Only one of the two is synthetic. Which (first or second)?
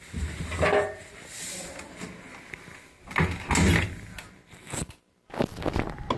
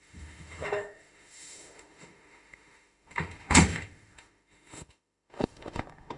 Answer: second